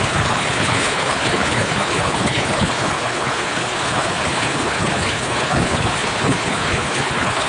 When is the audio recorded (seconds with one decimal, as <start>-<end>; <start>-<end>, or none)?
none